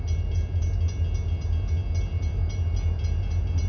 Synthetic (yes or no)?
no